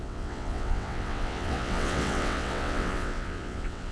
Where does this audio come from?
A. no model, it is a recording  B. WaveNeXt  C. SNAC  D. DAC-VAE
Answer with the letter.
B